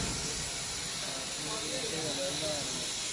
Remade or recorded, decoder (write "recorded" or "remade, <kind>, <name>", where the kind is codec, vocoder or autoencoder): recorded